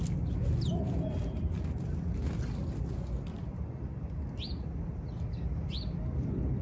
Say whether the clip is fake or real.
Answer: real